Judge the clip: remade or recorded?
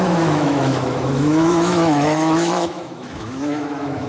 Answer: remade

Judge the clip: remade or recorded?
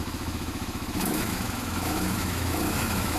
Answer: remade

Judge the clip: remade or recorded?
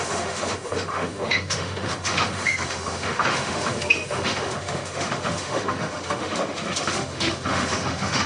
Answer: remade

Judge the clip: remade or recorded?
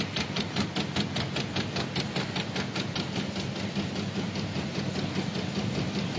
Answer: recorded